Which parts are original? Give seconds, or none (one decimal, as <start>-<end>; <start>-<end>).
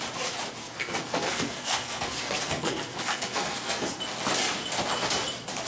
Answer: 0.0-0.6; 4.0-5.7